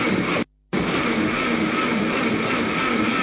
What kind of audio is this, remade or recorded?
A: recorded